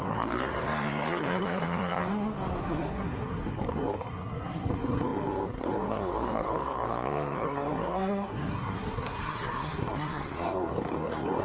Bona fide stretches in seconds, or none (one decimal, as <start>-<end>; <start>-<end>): 2.0-2.6